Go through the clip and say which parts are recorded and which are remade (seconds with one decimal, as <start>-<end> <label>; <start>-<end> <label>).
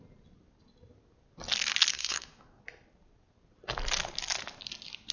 0.0-1.9 recorded; 1.9-2.6 remade; 2.6-5.1 recorded